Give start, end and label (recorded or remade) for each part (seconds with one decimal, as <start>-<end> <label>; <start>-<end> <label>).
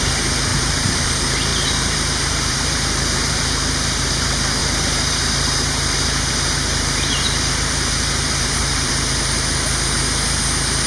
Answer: 0.0-0.5 recorded; 0.5-1.1 remade; 1.1-1.5 recorded; 1.5-4.1 remade; 4.1-4.6 recorded; 4.6-8.9 remade; 8.9-10.9 recorded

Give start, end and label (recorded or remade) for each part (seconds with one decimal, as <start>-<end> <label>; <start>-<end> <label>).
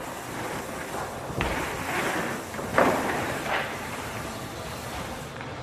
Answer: 0.0-2.7 recorded; 2.7-5.6 remade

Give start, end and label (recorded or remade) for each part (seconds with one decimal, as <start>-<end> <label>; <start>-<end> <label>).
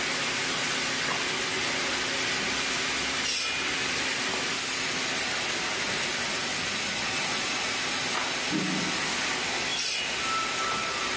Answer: 0.0-11.2 recorded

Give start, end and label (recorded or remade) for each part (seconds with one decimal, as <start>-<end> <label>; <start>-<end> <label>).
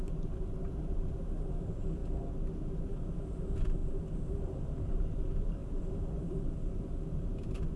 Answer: 0.0-2.0 remade; 2.0-2.7 recorded; 2.7-7.8 remade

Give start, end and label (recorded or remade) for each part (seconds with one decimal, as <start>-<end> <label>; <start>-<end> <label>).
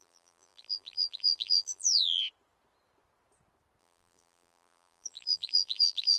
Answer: 0.0-2.2 remade; 2.2-3.8 recorded; 3.8-6.2 remade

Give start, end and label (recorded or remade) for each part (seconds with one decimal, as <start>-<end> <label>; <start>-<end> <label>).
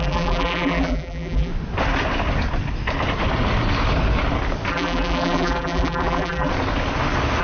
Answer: 0.0-1.5 remade; 1.5-4.7 recorded; 4.7-6.5 remade; 6.5-7.4 recorded